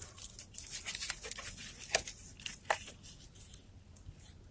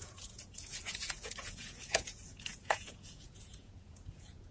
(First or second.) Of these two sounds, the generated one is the second